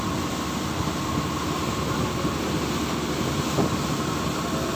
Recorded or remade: recorded